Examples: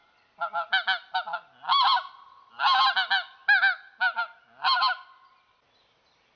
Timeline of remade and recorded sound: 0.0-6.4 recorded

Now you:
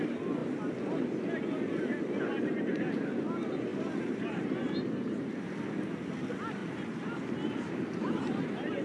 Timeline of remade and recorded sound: 0.0-3.7 recorded; 3.7-5.5 remade; 5.5-6.6 recorded; 6.6-8.4 remade; 8.4-8.8 recorded

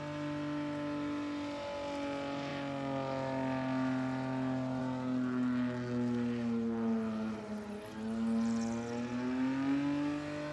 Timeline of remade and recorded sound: 0.0-10.5 recorded

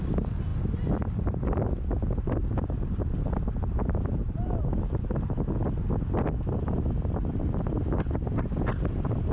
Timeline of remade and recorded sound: 0.0-9.3 recorded

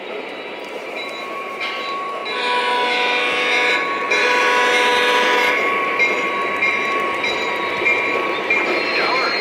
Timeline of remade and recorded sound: 0.0-2.2 remade; 2.2-4.1 recorded; 4.1-9.4 remade

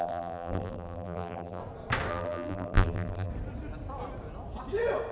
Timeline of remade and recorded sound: 0.0-1.6 remade; 1.6-2.1 recorded; 2.1-3.3 remade; 3.3-5.1 recorded